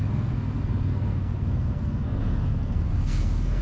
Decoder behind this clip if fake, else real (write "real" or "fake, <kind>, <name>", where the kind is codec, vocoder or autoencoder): fake, codec, SNAC